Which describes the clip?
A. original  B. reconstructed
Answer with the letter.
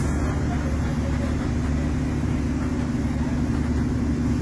A